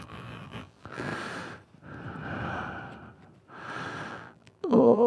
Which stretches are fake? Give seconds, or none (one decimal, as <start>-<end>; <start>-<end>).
0.0-1.1; 4.1-5.1